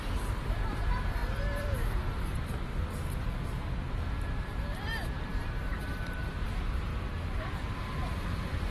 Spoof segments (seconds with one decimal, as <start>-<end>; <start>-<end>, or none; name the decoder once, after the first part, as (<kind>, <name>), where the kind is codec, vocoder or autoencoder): 0.0-1.2 (vocoder, BigVGAN v2); 4.0-5.3; 5.8-6.9; 7.6-8.7